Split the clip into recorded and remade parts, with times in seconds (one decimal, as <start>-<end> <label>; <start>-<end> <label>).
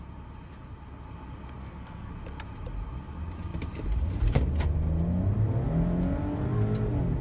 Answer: 0.0-1.6 recorded; 1.6-2.1 remade; 2.1-7.2 recorded